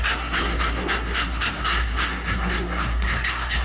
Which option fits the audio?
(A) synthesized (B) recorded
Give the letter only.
A